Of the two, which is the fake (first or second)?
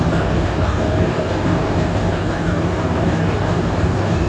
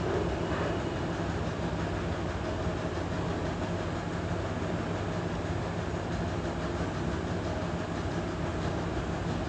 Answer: first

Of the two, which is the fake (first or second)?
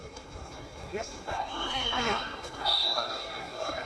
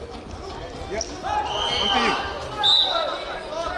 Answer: first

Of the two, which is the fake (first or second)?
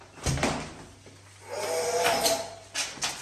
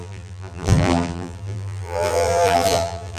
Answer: second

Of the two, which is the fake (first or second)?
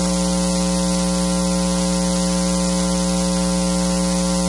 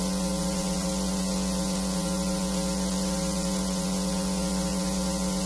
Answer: second